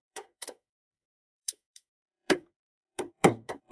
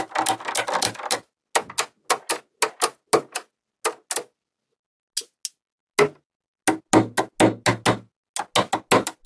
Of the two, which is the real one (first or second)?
second